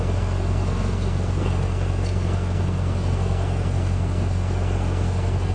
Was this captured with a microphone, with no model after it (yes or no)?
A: no